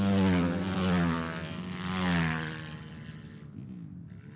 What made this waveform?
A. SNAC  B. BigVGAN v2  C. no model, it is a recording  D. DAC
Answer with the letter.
C